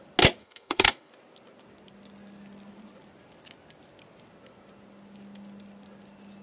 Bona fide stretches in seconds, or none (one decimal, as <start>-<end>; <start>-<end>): 0.0-0.4; 1.1-6.4